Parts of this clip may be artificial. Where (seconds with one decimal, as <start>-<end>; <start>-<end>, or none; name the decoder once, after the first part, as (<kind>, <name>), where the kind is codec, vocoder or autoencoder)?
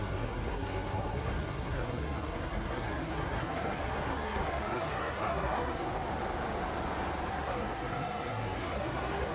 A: 0.0-5.9 (codec, SNAC); 7.3-9.3